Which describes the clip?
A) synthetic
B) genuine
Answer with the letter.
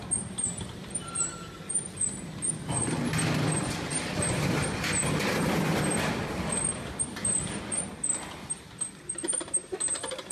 A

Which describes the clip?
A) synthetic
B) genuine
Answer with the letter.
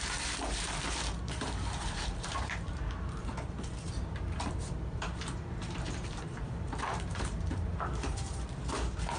A